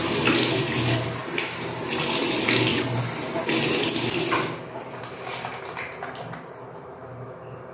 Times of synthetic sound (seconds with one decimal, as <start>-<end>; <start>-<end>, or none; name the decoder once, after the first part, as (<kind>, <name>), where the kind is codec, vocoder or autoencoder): none